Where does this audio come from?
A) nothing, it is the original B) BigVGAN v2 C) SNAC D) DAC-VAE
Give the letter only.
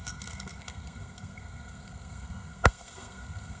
C